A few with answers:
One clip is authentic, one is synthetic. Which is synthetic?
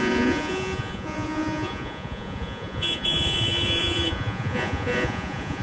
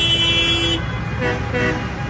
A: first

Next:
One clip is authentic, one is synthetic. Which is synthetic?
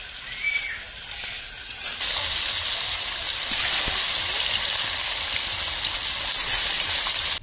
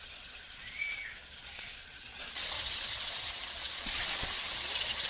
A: second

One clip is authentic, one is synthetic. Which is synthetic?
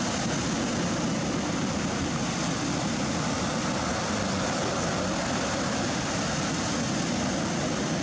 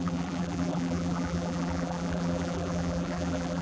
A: second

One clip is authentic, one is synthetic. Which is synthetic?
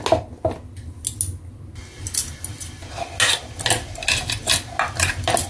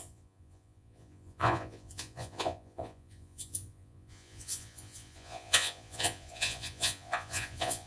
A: second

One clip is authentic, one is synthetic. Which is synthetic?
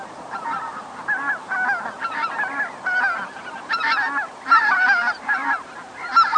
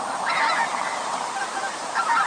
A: second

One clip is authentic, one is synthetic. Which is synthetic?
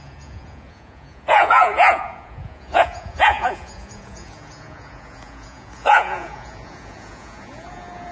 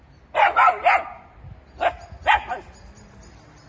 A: first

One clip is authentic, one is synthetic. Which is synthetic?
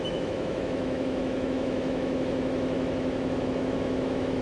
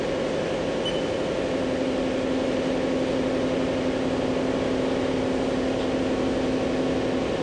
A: first